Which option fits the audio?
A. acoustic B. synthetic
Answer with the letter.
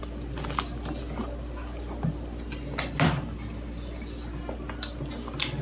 A